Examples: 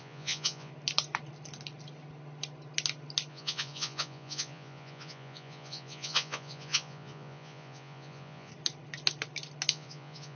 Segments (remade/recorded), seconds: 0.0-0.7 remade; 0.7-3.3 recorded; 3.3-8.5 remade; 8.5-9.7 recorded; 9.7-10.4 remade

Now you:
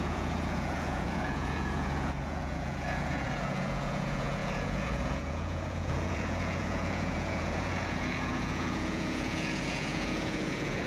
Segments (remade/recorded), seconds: 0.0-10.9 remade

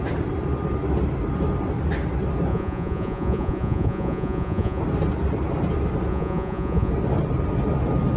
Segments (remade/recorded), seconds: 0.0-2.5 recorded; 2.5-4.8 remade; 4.8-6.1 recorded; 6.1-6.9 remade; 6.9-8.2 recorded

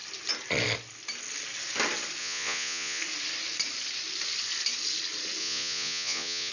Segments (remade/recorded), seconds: 0.0-2.2 recorded; 2.2-3.0 remade; 3.0-5.4 recorded; 5.4-6.5 remade

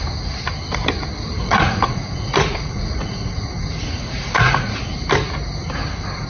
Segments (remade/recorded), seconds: 0.0-1.4 recorded; 1.4-4.8 remade; 4.8-6.3 recorded

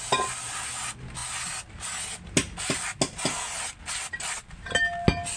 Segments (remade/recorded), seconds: 0.0-5.4 recorded